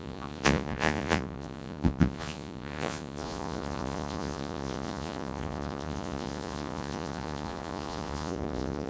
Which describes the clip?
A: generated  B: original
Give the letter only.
A